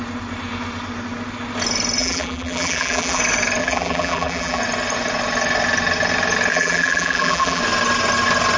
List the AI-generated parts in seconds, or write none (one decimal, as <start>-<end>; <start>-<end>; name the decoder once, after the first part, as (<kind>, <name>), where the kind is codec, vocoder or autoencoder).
2.0-3.2 (vocoder, BigVGAN v2); 3.6-4.6; 6.5-7.6